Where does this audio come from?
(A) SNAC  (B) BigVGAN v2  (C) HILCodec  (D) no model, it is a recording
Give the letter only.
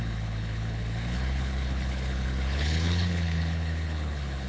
C